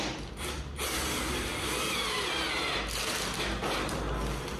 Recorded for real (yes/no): yes